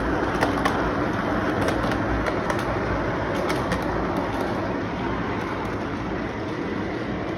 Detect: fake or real real